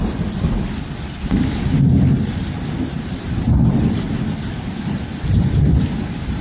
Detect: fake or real real